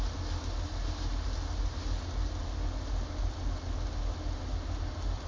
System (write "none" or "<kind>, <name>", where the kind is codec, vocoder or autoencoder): none